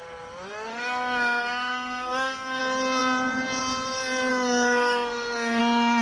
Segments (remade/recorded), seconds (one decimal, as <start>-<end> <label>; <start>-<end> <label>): 0.0-0.7 recorded; 0.7-2.6 remade; 2.6-4.3 recorded; 4.3-5.6 remade; 5.6-6.0 recorded